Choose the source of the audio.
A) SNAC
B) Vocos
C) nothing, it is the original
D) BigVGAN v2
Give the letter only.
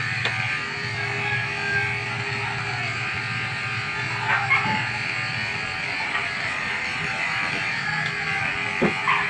C